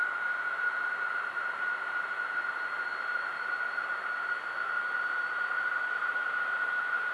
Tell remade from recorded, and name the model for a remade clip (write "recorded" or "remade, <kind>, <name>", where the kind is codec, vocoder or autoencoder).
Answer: remade, vocoder, BigVGAN v2